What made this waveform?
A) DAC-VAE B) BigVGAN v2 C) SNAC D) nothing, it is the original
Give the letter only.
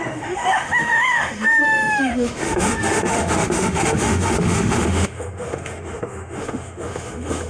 A